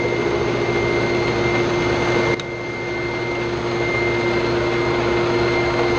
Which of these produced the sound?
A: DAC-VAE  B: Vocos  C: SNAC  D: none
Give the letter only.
D